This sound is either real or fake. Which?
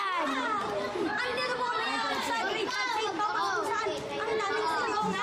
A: fake